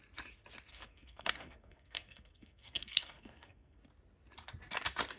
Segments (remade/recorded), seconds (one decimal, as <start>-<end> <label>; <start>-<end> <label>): 0.0-0.7 recorded; 0.7-3.8 remade; 3.8-5.2 recorded